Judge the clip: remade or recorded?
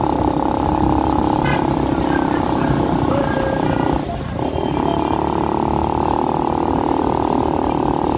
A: recorded